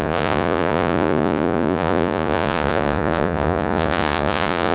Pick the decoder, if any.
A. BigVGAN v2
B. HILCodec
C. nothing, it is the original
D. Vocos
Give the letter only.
D